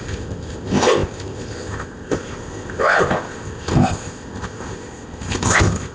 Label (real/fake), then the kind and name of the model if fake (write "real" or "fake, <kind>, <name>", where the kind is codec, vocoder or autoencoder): fake, codec, ZipCodec